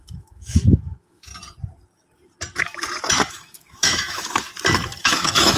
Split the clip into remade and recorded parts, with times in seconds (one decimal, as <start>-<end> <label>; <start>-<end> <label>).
0.0-1.3 remade; 1.3-3.3 recorded; 3.3-4.5 remade; 4.5-5.0 recorded; 5.0-5.6 remade